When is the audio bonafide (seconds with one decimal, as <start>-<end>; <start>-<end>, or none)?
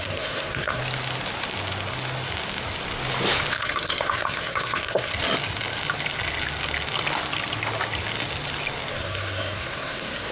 0.8-3.5; 5.1-8.9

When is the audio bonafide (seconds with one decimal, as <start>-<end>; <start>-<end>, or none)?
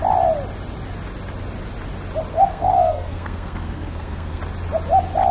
0.0-2.3; 4.4-5.3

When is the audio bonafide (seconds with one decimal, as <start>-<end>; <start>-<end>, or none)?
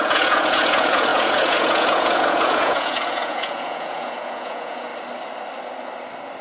4.9-6.4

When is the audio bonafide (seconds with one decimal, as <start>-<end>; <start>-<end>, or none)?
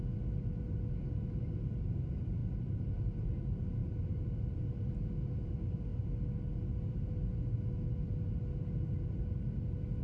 0.0-2.4; 3.4-3.8; 4.9-10.0